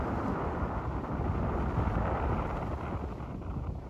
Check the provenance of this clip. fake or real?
real